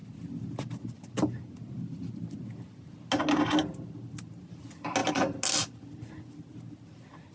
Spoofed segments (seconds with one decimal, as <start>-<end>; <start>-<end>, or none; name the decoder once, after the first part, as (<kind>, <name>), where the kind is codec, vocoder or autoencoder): none